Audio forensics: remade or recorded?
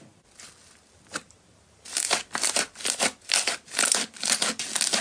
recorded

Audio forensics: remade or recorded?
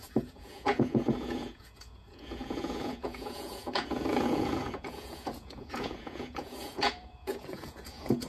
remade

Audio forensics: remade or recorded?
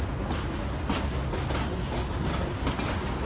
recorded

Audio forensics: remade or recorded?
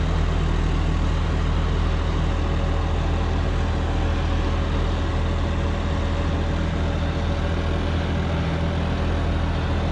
recorded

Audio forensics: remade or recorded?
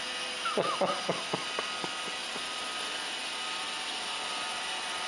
recorded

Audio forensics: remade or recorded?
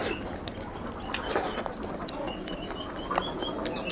recorded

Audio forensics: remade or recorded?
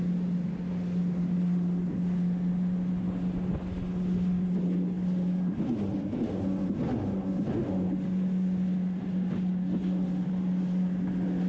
recorded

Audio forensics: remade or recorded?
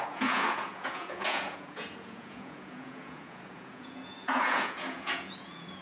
remade